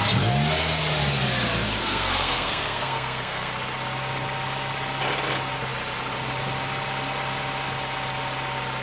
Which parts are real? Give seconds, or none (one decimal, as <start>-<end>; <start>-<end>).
0.0-1.8; 3.5-8.8